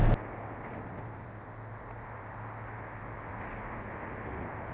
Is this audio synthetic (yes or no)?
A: no